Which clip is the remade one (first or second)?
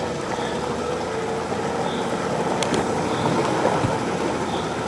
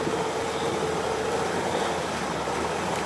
second